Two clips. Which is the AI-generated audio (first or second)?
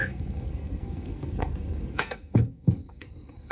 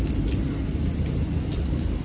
first